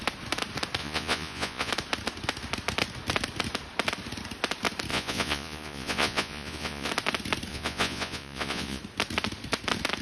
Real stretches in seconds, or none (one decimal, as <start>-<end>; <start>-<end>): 0.0-0.8; 1.7-4.9; 6.9-7.5; 8.8-10.0